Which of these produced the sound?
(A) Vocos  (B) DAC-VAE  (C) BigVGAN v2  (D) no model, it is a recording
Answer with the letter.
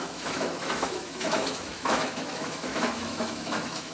B